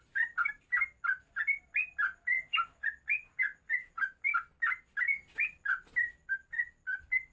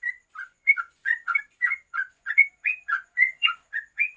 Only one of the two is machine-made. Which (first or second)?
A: second